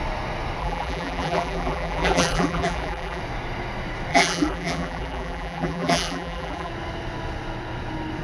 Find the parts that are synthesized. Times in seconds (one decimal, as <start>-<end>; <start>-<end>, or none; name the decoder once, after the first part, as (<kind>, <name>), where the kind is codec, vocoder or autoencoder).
0.6-3.2 (vocoder, BigVGAN v2); 4.1-6.7